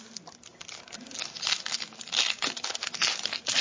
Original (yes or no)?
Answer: yes